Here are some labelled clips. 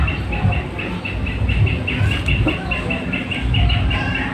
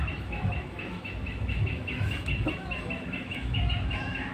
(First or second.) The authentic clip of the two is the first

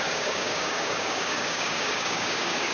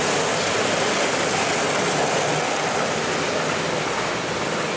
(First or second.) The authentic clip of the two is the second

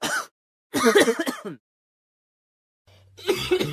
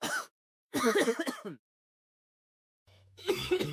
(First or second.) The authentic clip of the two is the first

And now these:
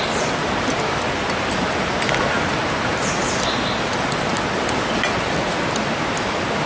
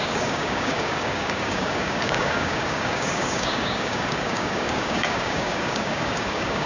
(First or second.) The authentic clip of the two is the first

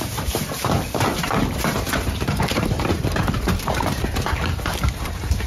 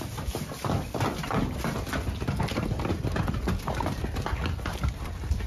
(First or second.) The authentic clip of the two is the second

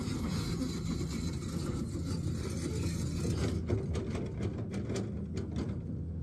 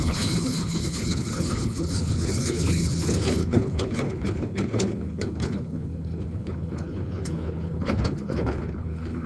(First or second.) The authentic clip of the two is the first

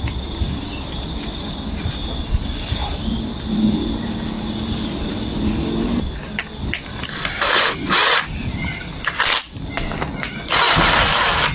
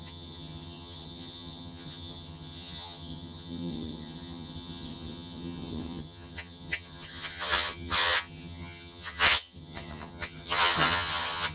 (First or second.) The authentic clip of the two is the first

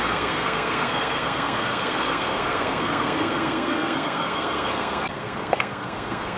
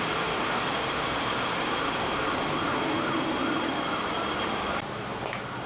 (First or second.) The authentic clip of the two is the second